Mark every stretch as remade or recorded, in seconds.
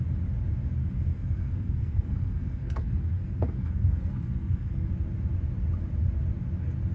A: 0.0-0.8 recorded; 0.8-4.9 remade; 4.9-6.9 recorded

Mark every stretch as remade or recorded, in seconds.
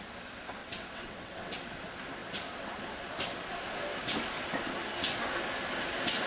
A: 0.0-0.6 recorded; 0.6-1.6 remade; 1.6-6.3 recorded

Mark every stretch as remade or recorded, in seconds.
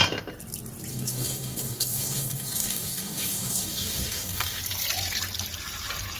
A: 0.0-0.9 recorded; 0.9-4.6 remade; 4.6-6.2 recorded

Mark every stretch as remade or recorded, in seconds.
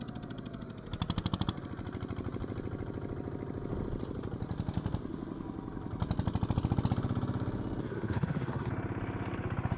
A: 0.0-7.8 recorded; 7.8-8.7 remade; 8.7-9.8 recorded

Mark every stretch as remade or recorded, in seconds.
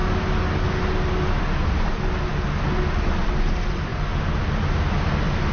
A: 0.0-5.5 recorded